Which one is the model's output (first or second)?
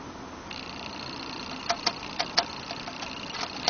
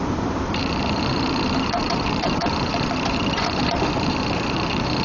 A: second